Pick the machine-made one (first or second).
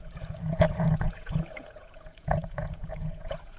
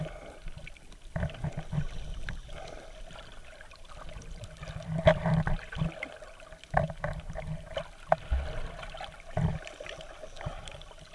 first